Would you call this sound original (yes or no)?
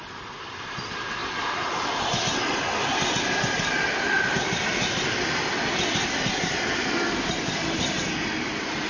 yes